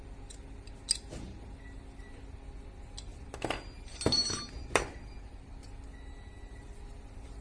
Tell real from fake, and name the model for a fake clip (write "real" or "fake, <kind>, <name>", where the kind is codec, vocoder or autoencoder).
real